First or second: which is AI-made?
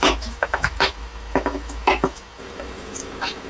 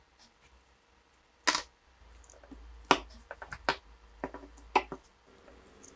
first